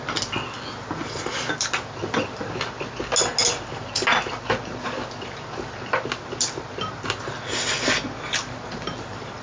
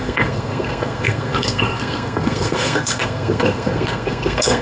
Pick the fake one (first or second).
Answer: second